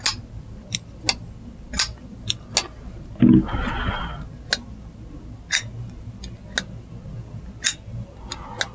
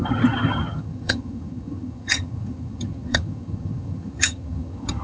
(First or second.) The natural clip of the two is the first